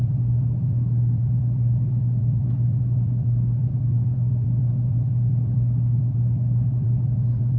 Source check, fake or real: fake